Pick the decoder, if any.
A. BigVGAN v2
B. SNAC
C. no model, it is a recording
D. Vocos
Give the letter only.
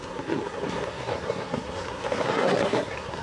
B